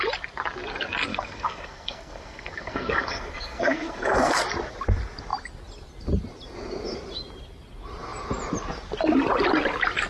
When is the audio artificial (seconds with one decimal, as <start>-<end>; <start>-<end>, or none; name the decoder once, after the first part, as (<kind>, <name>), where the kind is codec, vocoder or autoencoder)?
1.1-4.4 (codec, SNAC)

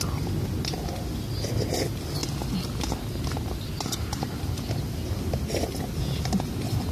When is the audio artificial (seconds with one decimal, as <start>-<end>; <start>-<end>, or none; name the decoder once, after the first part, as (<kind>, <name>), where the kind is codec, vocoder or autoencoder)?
none

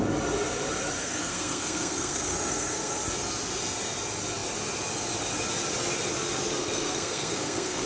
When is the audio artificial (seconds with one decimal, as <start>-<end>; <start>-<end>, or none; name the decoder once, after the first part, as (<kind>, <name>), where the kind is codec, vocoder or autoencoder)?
1.0-3.0 (codec, SNAC); 6.6-7.9

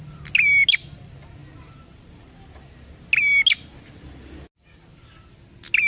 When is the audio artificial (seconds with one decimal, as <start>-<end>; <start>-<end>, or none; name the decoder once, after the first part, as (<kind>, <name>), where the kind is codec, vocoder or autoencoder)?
none

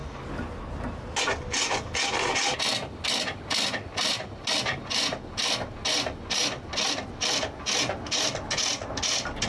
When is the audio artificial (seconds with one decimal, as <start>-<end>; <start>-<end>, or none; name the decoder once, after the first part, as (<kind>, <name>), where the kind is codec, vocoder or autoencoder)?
none

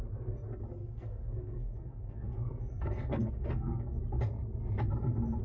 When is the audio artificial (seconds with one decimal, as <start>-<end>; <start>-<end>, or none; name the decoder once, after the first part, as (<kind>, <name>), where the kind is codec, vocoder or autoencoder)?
0.8-4.0 (codec, SNAC)

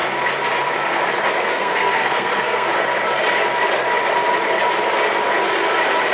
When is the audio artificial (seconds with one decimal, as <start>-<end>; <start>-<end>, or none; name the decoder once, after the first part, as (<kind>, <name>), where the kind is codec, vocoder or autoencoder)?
1.5-2.7 (codec, SNAC)